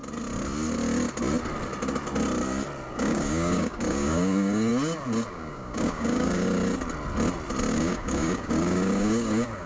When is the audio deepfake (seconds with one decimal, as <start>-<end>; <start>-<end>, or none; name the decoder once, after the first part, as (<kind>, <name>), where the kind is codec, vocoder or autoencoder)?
2.9-4.7 (codec, DAC); 5.3-6.6; 7.7-9.7